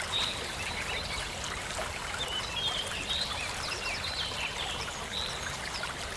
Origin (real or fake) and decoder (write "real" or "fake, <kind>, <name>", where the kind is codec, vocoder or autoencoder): fake, vocoder, BigVGAN v2